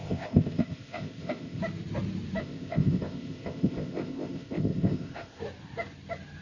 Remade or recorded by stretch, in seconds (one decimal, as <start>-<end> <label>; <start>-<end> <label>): 0.0-1.6 remade; 1.6-2.4 recorded; 2.4-5.4 remade; 5.4-6.4 recorded